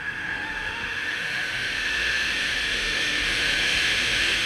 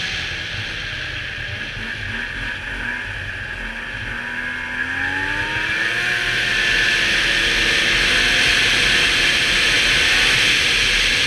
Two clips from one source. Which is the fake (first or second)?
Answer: first